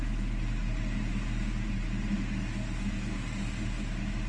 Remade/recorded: recorded